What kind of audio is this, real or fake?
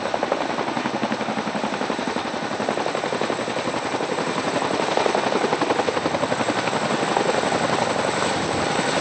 real